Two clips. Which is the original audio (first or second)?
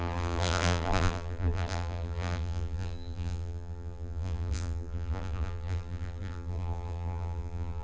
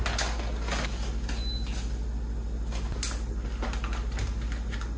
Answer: second